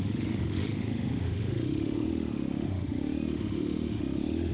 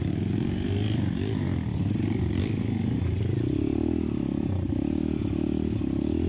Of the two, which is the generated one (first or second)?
first